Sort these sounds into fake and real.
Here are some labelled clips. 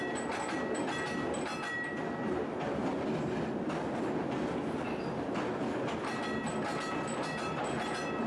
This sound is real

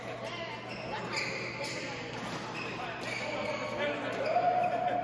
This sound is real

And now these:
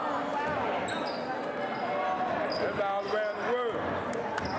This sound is real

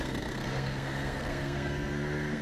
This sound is fake